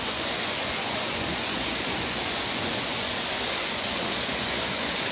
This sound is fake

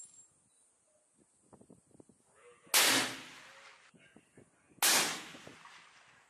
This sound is real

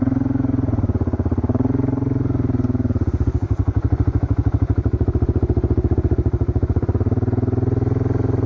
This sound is fake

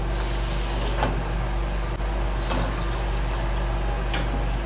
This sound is real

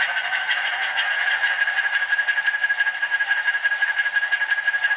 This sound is fake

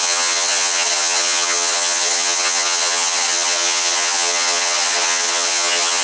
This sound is fake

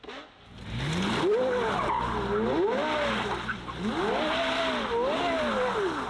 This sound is real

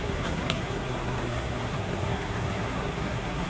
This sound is fake